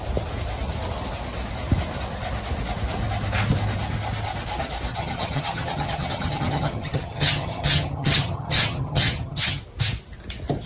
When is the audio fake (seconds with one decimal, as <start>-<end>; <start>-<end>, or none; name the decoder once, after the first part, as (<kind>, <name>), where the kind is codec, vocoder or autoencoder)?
4.9-9.6 (vocoder, HiFi-GAN)